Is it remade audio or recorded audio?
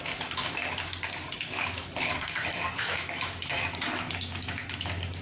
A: remade